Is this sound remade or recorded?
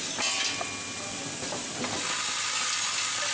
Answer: recorded